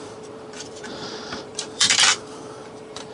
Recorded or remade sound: remade